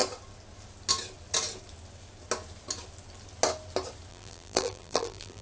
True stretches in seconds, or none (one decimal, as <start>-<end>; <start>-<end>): 0.0-4.1